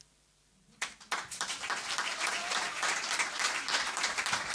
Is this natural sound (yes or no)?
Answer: no